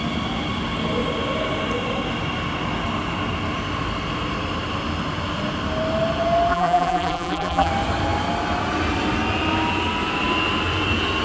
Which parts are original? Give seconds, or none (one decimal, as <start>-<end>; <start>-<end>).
0.0-6.5; 7.7-11.2

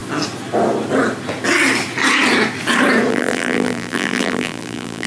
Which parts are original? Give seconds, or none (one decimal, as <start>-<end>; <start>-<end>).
0.0-3.1